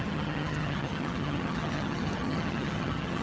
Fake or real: fake